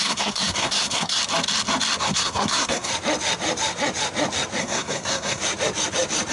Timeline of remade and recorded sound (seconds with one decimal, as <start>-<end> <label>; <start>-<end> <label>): 0.0-1.2 remade; 1.2-2.0 recorded; 2.0-2.9 remade; 2.9-4.6 recorded; 4.6-5.4 remade; 5.4-6.3 recorded